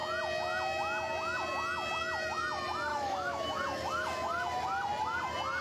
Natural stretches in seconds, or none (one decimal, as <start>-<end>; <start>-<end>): 0.0-2.9; 3.6-5.6